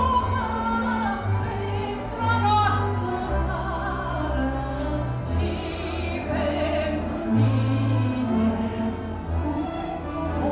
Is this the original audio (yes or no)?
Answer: yes